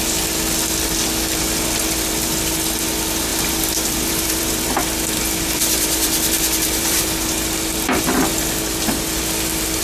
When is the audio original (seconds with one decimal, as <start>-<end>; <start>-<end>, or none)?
0.0-3.3; 7.0-9.8